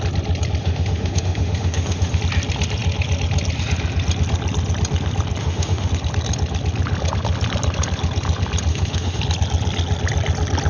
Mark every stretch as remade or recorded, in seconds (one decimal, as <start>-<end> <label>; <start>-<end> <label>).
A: 0.0-0.6 recorded; 0.6-2.2 remade; 2.2-5.4 recorded; 5.4-5.9 remade; 5.9-8.7 recorded; 8.7-9.2 remade; 9.2-10.7 recorded